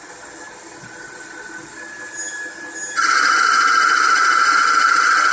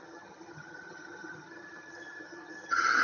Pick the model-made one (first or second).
second